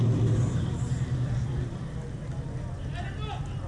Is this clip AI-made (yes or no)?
no